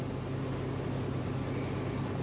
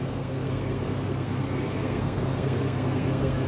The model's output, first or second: second